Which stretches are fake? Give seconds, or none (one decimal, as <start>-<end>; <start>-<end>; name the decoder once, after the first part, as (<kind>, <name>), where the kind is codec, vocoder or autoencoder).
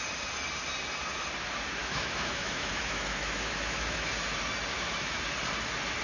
1.8-4.1 (autoencoder, DAC-VAE); 4.7-5.2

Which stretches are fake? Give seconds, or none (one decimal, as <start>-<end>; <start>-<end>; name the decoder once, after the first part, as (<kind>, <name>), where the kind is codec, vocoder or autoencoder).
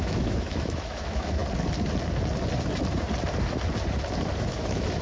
0.0-1.4 (autoencoder, DAC-VAE); 4.4-5.0